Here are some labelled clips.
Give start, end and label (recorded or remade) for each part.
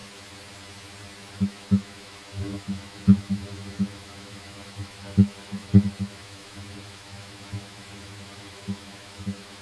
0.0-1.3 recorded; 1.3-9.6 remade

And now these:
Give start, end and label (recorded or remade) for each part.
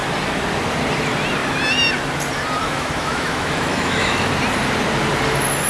0.0-2.6 recorded; 2.6-4.3 remade; 4.3-5.7 recorded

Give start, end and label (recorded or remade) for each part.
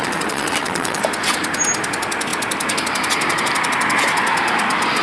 0.0-1.0 remade; 1.0-5.0 recorded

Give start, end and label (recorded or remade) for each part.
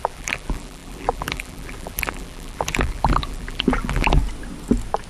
0.0-4.2 remade; 4.2-5.1 recorded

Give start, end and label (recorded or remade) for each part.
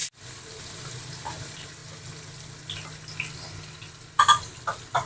0.0-0.6 recorded; 0.6-1.8 remade; 1.8-5.1 recorded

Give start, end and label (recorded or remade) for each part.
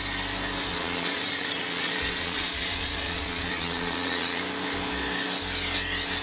0.0-0.7 recorded; 0.7-4.4 remade; 4.4-6.2 recorded